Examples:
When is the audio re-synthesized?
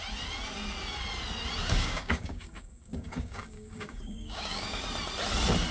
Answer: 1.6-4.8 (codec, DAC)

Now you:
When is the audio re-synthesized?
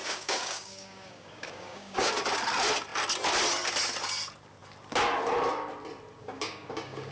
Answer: 0.0-2.1 (codec, DAC); 6.2-7.1